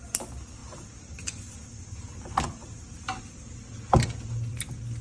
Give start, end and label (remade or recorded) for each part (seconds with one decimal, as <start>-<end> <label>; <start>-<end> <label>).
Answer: 0.0-5.0 recorded